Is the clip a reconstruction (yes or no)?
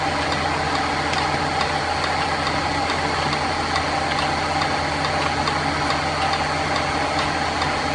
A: no